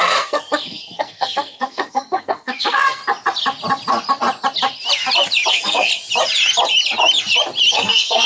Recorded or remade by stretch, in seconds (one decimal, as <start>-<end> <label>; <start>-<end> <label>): 0.0-3.0 remade; 3.0-5.5 recorded; 5.5-5.9 remade; 5.9-7.7 recorded; 7.7-8.3 remade